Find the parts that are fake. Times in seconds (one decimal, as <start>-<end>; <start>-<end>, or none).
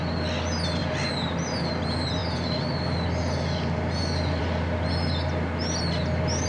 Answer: none